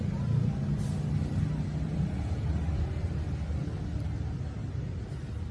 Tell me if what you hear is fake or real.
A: real